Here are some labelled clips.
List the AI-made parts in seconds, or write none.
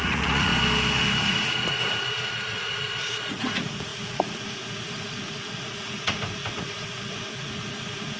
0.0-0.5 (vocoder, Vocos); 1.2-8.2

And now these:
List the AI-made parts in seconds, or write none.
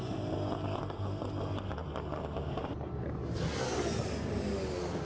none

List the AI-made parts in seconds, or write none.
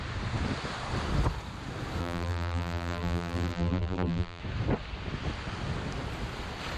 2.0-4.4 (vocoder, BigVGAN v2)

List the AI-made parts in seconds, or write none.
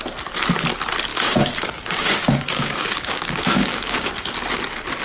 1.1-4.1 (codec, DAC)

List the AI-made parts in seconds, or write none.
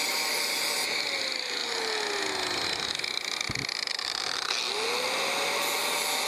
none